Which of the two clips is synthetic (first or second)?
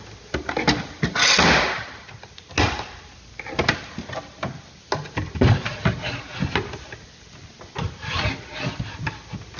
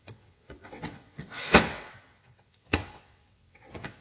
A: second